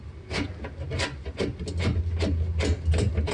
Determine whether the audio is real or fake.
real